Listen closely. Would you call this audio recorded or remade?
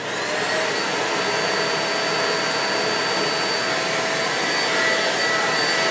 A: recorded